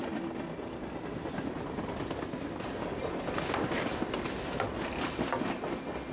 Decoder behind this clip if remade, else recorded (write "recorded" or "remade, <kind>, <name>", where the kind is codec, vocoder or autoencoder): recorded